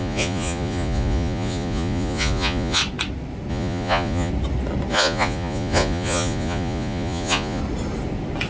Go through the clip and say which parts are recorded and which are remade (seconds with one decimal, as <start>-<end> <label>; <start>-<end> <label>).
0.0-2.8 remade; 2.8-3.5 recorded; 3.5-4.3 remade; 4.3-4.9 recorded; 4.9-7.6 remade; 7.6-8.5 recorded